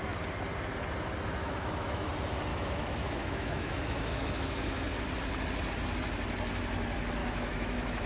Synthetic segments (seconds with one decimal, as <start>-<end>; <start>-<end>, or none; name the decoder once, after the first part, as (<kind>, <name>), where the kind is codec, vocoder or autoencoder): 1.4-2.1 (autoencoder, DAC-VAE); 2.5-4.7; 7.2-8.1